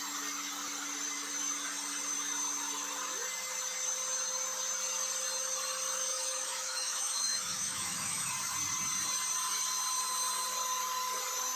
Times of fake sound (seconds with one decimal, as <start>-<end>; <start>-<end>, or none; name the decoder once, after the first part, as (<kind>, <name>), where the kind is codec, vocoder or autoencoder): 6.1-8.3 (autoencoder, DAC-VAE)